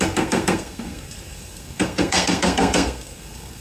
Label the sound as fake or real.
fake